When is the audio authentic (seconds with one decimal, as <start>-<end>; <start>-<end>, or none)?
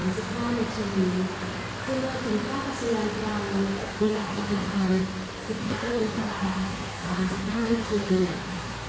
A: 0.0-3.8; 5.0-5.6